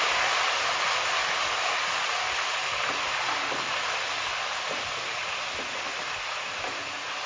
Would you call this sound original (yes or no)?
yes